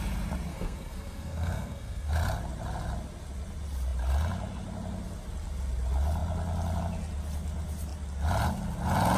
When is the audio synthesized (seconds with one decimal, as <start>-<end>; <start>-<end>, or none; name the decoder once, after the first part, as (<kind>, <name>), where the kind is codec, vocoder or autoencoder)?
0.5-2.1 (codec, SNAC)